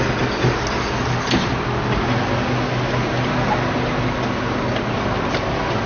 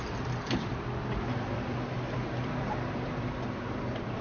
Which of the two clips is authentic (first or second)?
first